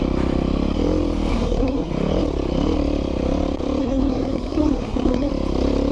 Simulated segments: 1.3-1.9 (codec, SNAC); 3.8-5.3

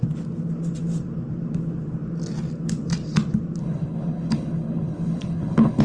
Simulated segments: 3.6-5.8 (codec, HILCodec)

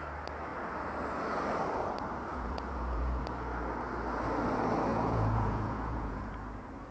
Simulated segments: 2.3-3.2 (vocoder, Vocos); 4.9-6.3

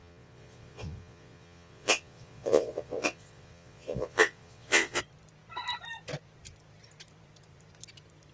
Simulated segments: 0.0-5.0 (vocoder, Vocos)

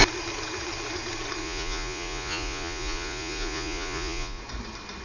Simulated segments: 1.4-4.4 (vocoder, Vocos)